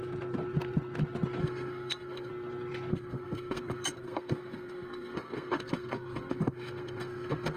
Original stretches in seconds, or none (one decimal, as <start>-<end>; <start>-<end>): 0.0-1.4; 2.3-2.9